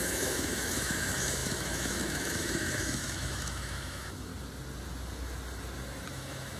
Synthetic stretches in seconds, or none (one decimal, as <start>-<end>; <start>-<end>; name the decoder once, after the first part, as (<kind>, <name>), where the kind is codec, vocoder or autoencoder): 0.0-4.3 (autoencoder, DAC-VAE); 6.1-6.6